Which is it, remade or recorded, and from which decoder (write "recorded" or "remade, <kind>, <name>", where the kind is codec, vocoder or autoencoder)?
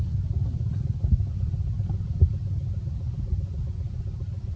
recorded